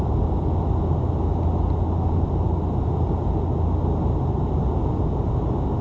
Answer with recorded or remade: recorded